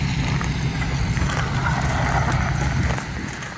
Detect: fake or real real